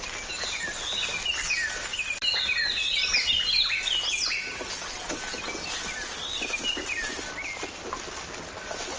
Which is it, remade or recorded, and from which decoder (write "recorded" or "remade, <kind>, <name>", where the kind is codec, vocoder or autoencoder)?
recorded